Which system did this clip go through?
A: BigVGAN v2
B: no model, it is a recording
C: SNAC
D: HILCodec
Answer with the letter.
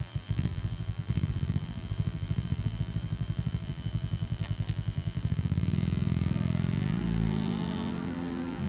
A